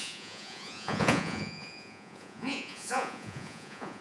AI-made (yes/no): yes